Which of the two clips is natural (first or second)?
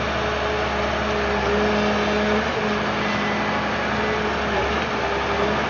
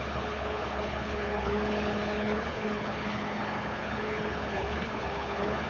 first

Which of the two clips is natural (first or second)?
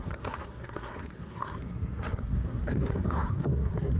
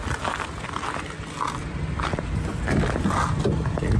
second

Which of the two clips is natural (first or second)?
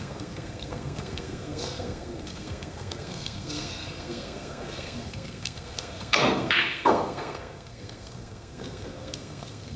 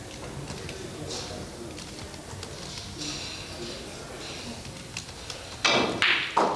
second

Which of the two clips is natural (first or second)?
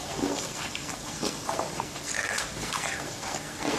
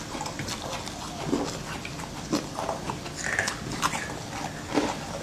second